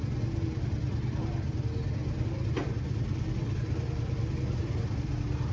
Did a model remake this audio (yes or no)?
no